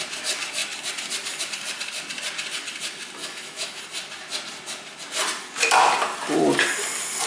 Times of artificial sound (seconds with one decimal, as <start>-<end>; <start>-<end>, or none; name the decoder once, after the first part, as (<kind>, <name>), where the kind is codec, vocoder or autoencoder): 3.2-3.8 (autoencoder, DAC-VAE)